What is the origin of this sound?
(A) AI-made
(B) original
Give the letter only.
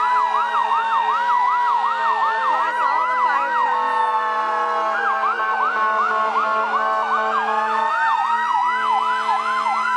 B